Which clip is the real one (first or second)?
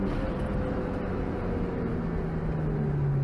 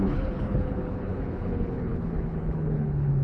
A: first